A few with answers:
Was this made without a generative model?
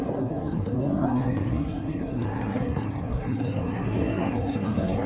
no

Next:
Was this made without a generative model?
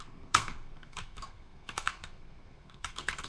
no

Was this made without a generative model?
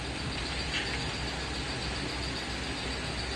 yes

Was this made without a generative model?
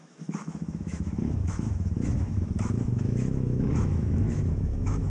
no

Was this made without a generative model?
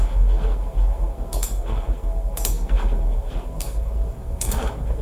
no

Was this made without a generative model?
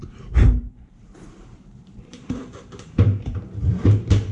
no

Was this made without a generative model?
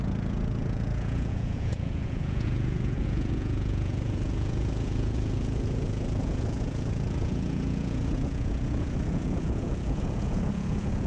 no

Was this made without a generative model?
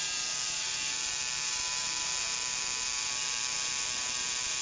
no